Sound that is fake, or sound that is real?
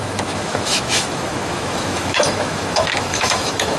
fake